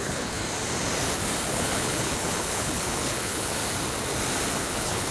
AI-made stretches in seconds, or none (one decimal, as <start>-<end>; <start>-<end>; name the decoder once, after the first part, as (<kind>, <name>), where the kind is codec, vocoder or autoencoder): 0.0-0.4 (codec, HILCodec); 1.5-3.6; 4.6-5.1

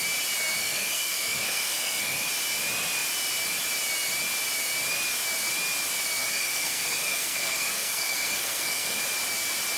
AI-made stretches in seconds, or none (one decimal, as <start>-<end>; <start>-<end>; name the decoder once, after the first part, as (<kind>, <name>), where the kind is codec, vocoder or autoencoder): 0.6-2.3 (codec, SNAC); 6.2-9.0

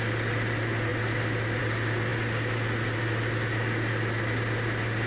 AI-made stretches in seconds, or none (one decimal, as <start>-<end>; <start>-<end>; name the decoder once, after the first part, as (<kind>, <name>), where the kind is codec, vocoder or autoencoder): none

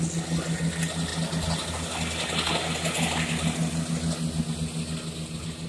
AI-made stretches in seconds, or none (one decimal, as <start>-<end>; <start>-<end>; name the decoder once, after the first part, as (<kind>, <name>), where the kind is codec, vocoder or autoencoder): none

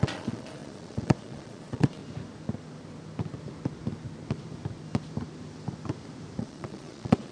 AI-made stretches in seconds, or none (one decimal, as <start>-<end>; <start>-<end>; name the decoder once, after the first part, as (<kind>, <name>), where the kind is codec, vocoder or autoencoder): 0.0-2.0 (vocoder, Vocos); 6.4-7.3

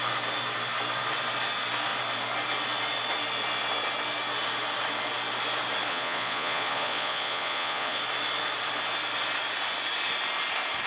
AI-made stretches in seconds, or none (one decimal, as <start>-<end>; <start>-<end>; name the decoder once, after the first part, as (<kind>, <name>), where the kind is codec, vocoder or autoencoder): 5.9-8.0 (vocoder, Vocos)